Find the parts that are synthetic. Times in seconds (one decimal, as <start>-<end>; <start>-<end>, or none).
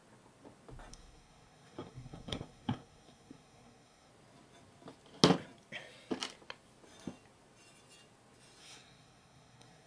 0.9-4.1; 8.6-9.9